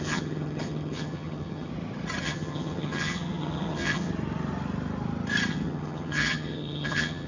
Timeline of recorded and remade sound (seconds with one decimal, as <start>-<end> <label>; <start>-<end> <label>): 0.0-1.7 remade; 1.7-2.2 recorded; 2.2-4.1 remade; 4.1-5.5 recorded; 5.5-7.3 remade